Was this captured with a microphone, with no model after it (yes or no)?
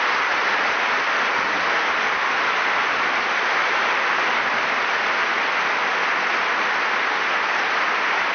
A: yes